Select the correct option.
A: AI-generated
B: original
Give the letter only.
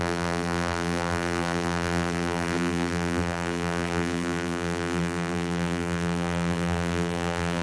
A